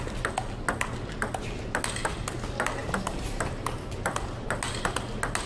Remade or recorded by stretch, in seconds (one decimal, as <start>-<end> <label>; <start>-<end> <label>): 0.0-2.8 recorded; 2.8-4.6 remade; 4.6-5.5 recorded